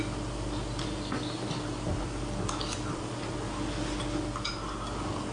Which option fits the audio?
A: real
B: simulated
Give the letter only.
A